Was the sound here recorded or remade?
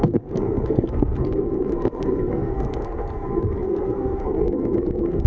remade